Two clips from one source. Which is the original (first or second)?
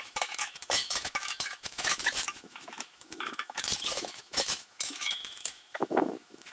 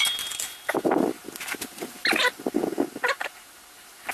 second